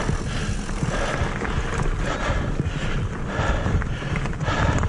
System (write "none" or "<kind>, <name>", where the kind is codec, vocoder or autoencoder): none